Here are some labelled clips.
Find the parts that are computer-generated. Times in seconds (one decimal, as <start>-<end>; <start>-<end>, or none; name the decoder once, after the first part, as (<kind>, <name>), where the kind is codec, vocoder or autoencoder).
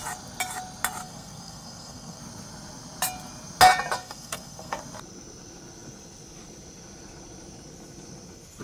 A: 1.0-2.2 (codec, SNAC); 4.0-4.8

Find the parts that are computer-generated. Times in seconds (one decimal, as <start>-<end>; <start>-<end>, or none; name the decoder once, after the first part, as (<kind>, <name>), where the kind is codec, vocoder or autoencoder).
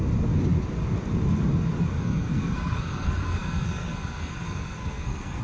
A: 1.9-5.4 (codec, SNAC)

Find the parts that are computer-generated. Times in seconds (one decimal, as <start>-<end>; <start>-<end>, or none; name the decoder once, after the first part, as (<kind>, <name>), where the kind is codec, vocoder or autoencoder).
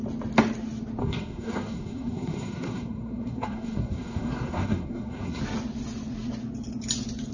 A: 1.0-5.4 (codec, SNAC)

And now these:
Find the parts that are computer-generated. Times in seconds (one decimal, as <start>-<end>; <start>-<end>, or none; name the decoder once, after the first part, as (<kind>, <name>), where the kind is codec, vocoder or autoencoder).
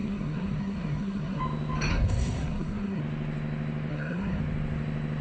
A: 0.0-1.4 (codec, SNAC); 1.9-3.0; 3.9-4.4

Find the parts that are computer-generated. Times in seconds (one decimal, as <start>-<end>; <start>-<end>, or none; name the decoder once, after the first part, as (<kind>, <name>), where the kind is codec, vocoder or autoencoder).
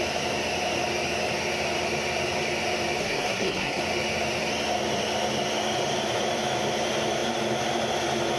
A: 3.0-3.8 (codec, SNAC)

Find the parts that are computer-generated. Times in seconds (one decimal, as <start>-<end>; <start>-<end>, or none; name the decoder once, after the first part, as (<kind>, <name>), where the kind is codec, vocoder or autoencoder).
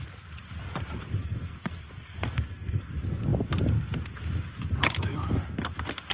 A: 1.2-2.8 (codec, SNAC)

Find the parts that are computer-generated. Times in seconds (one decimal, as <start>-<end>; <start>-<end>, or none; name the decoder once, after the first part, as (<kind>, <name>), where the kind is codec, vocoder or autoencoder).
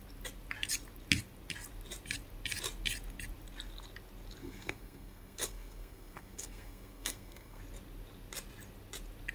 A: 4.4-7.6 (codec, SNAC)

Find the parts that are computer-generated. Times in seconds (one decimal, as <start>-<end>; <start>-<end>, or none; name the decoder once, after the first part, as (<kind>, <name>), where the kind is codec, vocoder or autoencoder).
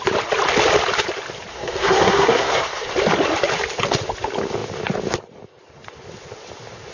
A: 1.5-2.9 (codec, SNAC)